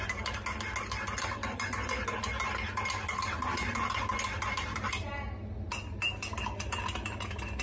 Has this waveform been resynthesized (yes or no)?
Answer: no